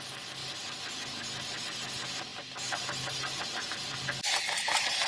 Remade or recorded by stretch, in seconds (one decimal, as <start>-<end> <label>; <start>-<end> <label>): 0.0-5.1 recorded